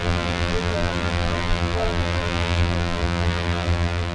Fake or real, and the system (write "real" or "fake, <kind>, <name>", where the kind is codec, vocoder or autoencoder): fake, vocoder, BigVGAN v2